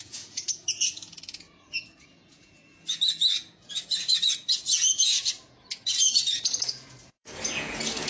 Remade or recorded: remade